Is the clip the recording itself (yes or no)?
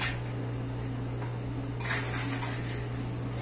yes